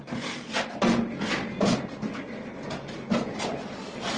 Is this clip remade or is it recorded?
recorded